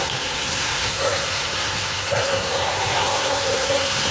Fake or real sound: fake